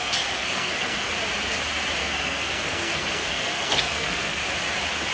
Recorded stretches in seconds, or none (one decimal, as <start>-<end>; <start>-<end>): 1.1-2.0; 4.4-5.1